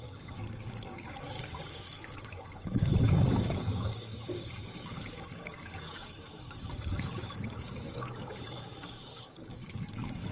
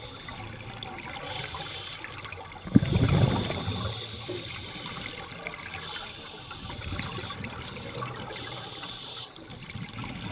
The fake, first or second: first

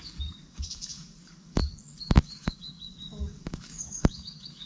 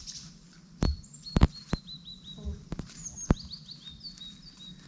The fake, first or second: first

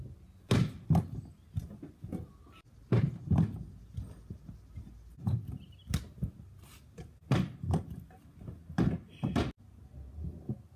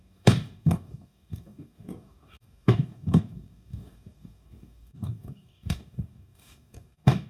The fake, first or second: second